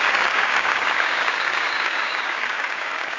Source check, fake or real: fake